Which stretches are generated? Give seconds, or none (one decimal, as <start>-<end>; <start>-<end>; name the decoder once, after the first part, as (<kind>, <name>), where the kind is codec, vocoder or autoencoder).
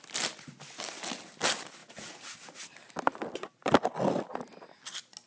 1.8-2.6 (vocoder, Vocos)